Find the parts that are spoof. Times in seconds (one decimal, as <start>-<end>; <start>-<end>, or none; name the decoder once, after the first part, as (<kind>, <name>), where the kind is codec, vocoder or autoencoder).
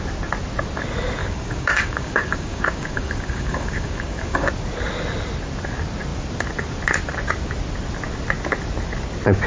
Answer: 1.2-4.5 (codec, DAC)